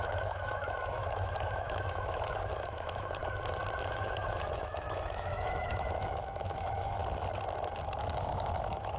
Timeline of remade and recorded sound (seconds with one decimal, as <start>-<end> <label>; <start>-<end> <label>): 0.0-3.2 remade; 3.2-3.9 recorded; 3.9-7.0 remade; 7.0-8.2 recorded; 8.2-9.0 remade